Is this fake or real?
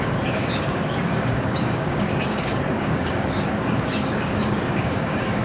fake